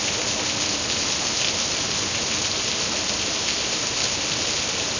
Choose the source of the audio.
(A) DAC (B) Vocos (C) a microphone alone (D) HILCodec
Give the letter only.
C